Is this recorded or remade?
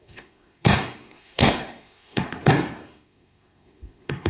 remade